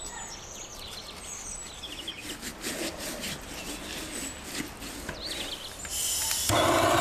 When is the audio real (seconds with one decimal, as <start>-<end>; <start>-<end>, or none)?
0.0-7.0